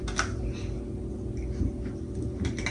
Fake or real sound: real